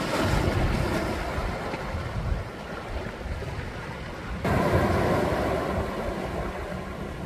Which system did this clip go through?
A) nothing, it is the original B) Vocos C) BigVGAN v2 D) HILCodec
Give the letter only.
A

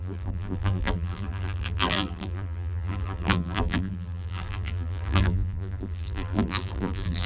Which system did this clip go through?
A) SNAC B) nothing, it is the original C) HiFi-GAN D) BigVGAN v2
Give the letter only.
D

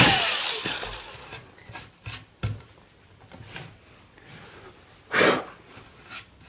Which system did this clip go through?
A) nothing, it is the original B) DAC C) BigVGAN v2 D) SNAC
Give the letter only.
C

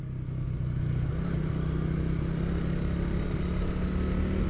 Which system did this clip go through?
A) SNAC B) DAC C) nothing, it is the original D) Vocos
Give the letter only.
C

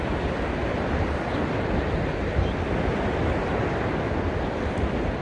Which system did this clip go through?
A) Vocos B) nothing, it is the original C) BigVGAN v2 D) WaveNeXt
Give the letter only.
B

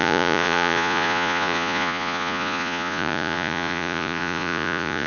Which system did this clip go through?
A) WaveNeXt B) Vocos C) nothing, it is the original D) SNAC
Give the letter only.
B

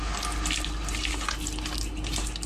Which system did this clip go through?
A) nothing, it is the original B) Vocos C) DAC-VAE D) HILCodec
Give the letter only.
A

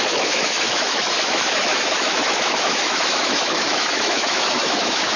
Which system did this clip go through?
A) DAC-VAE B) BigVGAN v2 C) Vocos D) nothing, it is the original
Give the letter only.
A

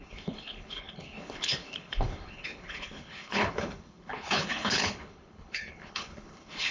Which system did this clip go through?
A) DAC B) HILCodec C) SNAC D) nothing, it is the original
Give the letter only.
B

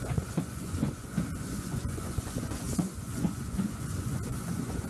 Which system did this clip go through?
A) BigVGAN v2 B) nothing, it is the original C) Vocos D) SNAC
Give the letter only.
C